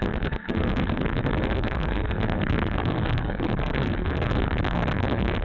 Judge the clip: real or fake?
fake